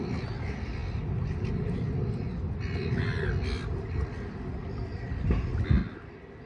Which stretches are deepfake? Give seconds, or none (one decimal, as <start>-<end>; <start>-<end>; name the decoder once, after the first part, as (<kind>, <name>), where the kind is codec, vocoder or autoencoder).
none